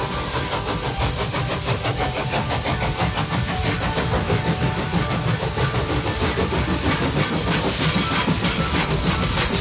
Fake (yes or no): no